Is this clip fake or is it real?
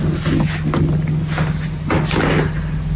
real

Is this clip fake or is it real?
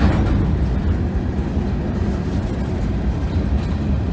real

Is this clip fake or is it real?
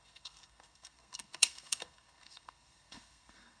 fake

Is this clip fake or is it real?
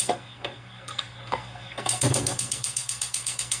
fake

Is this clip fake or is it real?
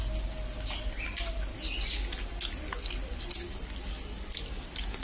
real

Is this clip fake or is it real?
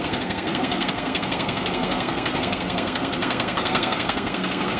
fake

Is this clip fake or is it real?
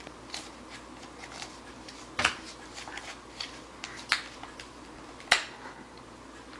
real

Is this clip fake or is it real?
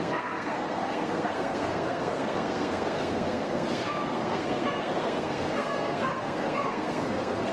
fake